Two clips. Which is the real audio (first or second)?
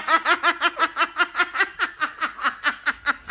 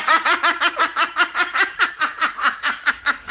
first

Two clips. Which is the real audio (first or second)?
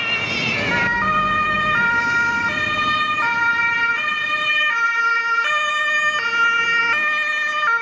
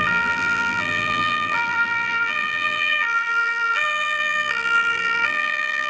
first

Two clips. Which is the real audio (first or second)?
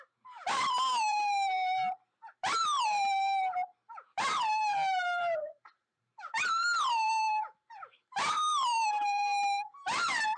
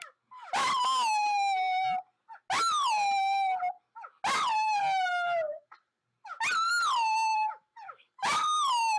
second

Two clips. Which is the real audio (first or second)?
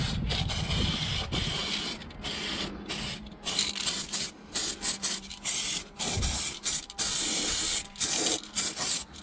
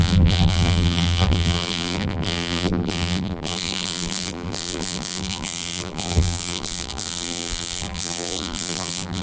first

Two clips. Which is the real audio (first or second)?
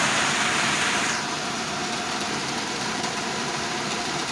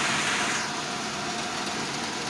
second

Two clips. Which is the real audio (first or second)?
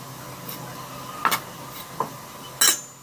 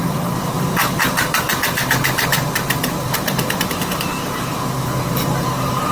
first